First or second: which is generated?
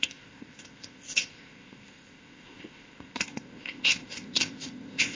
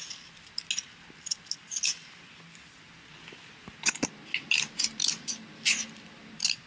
first